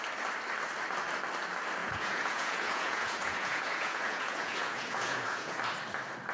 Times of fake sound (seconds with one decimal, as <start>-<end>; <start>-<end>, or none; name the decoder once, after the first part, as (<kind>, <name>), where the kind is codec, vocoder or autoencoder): 1.8-5.6 (vocoder, Vocos)